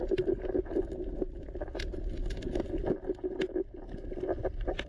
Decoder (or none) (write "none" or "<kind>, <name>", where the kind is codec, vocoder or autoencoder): none